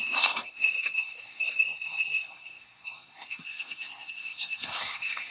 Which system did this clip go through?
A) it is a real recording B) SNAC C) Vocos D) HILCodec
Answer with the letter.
B